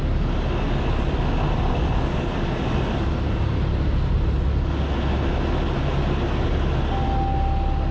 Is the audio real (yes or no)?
yes